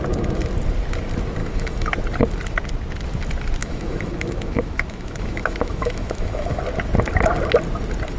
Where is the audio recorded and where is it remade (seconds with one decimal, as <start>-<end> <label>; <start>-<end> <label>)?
0.0-1.4 recorded; 1.4-1.9 remade; 1.9-3.6 recorded; 3.6-6.6 remade; 6.6-8.2 recorded

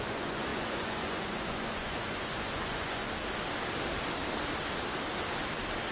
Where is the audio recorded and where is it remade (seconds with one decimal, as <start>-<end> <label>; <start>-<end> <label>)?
0.0-3.0 remade; 3.0-5.9 recorded

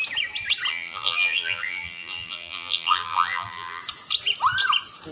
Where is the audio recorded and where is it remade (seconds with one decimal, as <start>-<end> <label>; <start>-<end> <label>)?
0.0-0.7 recorded; 0.7-3.8 remade; 3.8-5.1 recorded